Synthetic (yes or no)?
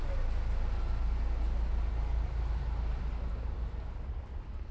no